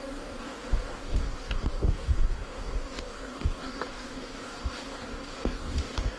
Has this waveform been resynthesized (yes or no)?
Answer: yes